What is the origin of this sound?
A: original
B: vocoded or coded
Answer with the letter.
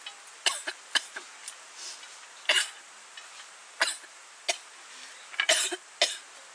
A